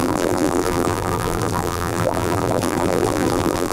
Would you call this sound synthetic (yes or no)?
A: yes